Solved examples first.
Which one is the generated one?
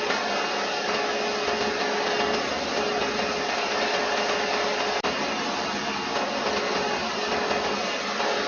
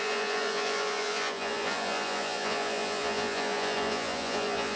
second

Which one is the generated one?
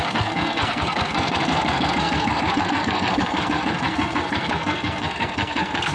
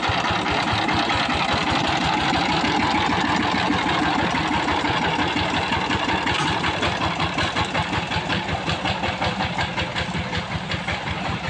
first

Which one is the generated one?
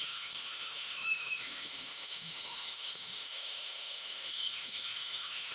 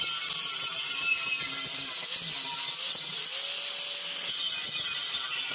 first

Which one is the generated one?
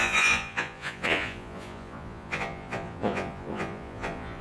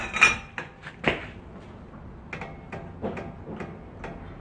first